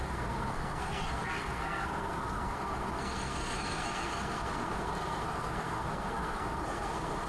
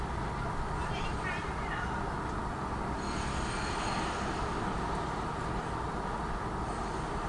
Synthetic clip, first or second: first